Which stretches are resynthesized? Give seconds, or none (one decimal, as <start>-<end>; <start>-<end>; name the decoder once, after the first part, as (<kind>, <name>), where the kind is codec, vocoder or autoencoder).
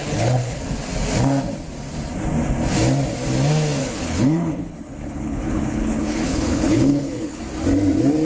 0.0-0.6 (codec, HILCodec); 3.8-7.4